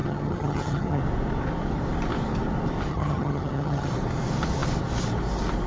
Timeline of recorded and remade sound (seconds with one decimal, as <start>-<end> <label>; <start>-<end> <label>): 0.0-1.0 remade; 1.0-2.9 recorded; 2.9-3.9 remade; 3.9-5.7 recorded